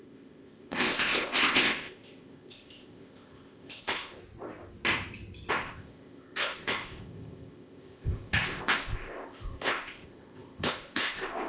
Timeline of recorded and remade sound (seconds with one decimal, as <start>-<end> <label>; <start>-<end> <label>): 0.0-4.2 remade; 4.2-5.5 recorded; 5.5-11.5 remade